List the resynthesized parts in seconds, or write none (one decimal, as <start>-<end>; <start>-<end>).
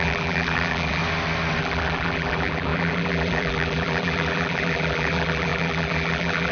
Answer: 0.0-1.0; 1.6-6.5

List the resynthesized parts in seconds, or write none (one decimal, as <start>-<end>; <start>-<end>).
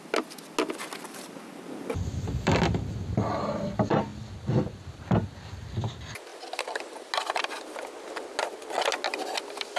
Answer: 4.1-5.5; 6.3-7.1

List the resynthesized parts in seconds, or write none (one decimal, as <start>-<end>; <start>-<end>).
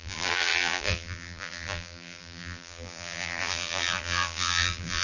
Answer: 0.0-5.0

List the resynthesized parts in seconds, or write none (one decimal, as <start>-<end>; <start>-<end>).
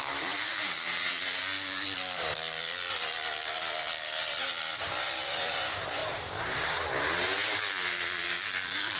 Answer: 0.0-1.4; 2.9-9.0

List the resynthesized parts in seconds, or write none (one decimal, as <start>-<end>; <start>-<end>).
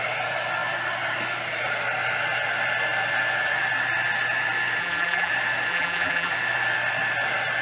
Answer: 4.8-5.3; 5.7-6.3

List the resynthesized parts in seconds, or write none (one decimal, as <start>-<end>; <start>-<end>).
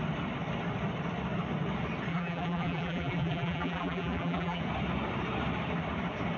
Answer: 2.1-4.6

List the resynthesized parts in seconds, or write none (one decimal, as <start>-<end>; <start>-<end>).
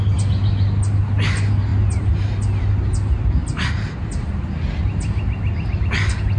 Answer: 3.4-4.3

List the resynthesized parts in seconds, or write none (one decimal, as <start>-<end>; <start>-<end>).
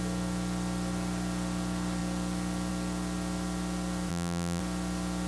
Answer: 4.1-4.6